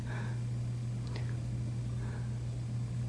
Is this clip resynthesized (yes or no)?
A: no